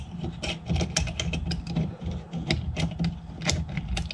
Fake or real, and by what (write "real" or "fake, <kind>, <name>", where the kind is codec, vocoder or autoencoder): real